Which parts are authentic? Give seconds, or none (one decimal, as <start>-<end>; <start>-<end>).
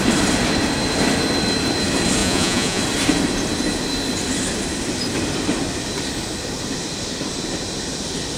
0.0-2.2; 2.8-8.4